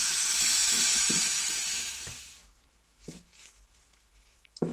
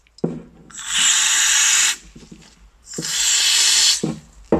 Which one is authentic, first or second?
second